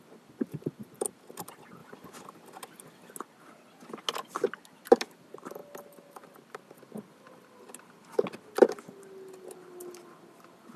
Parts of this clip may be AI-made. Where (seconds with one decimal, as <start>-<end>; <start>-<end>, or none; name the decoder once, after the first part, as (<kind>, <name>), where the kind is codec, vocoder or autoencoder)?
none

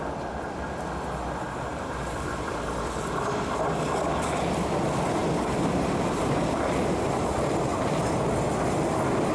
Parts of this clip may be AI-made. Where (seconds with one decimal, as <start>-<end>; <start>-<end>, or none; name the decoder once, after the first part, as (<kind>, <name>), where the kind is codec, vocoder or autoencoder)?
1.7-3.0 (vocoder, BigVGAN v2); 5.2-7.0

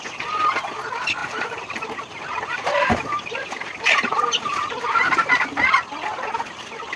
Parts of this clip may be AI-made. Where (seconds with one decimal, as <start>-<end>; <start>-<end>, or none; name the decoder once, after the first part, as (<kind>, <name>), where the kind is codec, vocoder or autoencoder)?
1.2-5.3 (vocoder, BigVGAN v2); 6.1-7.0

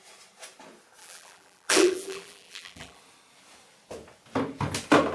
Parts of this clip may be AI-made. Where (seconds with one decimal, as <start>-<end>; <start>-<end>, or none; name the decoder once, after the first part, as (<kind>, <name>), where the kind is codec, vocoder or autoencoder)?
1.0-3.0 (vocoder, BigVGAN v2)

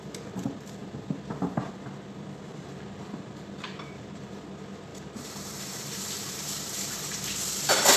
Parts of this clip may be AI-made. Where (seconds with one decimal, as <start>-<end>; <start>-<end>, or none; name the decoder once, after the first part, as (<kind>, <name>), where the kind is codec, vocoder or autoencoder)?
2.5-4.4 (vocoder, BigVGAN v2); 4.9-7.4

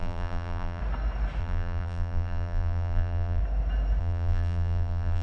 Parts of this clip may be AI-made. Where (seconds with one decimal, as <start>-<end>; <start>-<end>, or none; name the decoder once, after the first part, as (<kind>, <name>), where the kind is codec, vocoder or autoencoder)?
0.0-0.8 (vocoder, BigVGAN v2); 1.4-3.4; 4.0-5.2

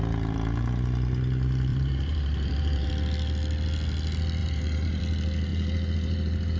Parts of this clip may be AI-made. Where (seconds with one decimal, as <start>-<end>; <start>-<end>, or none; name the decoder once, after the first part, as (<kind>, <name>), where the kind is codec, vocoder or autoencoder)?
1.7-2.9 (vocoder, BigVGAN v2); 4.4-5.0; 5.5-6.6

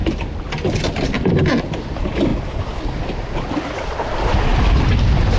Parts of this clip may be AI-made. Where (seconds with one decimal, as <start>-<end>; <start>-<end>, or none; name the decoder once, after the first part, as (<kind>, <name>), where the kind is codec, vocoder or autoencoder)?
0.0-1.6 (vocoder, BigVGAN v2); 4.5-5.4